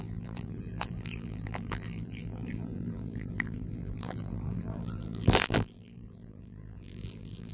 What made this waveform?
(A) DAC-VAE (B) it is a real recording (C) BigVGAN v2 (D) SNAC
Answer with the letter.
C